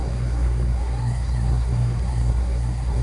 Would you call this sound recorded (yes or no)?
no